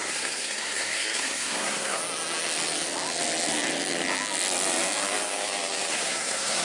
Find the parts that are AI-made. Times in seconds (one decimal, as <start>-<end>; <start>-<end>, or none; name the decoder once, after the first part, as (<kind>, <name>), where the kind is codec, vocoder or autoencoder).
0.0-2.0 (codec, SNAC); 5.9-6.6